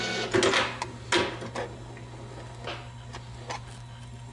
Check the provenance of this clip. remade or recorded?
recorded